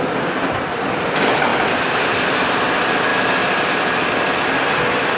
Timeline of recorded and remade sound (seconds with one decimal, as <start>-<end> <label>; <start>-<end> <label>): 0.0-5.2 remade